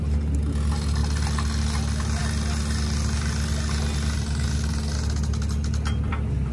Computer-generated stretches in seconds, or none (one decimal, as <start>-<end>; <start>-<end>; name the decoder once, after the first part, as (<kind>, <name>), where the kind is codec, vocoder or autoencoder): none